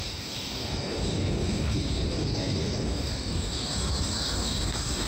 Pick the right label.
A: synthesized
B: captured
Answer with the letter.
A